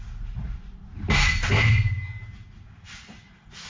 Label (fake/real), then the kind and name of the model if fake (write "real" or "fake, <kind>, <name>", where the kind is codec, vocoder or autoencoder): real